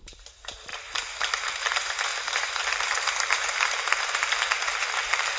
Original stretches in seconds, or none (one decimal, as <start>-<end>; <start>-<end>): 2.1-2.7